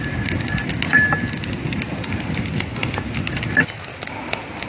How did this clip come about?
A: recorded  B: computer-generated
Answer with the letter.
A